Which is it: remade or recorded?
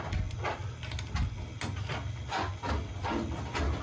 recorded